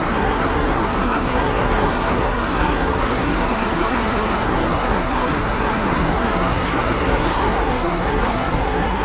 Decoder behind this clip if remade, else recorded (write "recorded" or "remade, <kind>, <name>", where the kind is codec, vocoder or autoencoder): remade, codec, SNAC